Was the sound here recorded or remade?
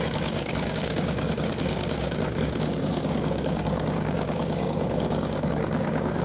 remade